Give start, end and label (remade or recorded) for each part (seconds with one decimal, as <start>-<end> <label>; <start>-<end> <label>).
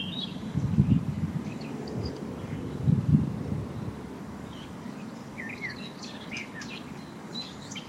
0.0-3.1 remade; 3.1-4.2 recorded; 4.2-7.9 remade